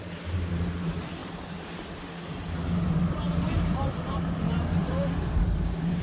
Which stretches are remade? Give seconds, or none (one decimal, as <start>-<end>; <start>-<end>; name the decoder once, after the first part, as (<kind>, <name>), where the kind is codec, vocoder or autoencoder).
0.0-6.0 (vocoder, BigVGAN v2)